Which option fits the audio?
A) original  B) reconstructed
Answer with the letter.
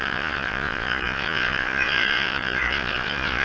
B